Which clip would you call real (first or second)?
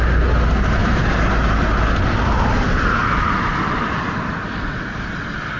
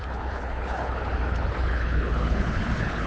first